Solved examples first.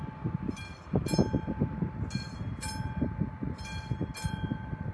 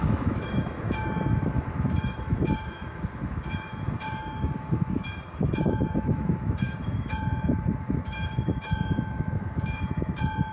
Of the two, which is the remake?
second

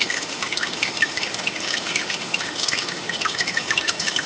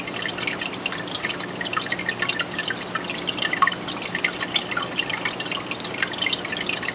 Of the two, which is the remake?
first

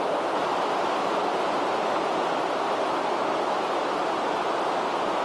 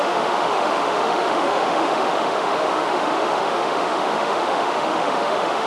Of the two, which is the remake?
second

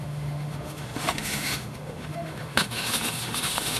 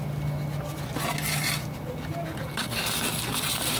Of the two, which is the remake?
first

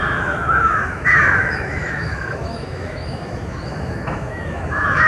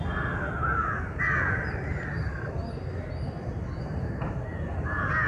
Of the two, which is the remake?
first